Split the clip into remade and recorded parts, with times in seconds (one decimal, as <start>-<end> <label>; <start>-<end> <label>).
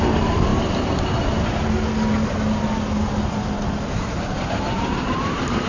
0.0-0.5 remade; 0.5-3.9 recorded; 3.9-5.7 remade